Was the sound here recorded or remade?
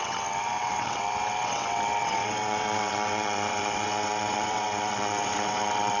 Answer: remade